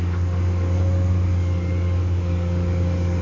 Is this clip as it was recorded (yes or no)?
no